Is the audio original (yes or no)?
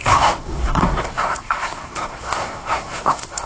no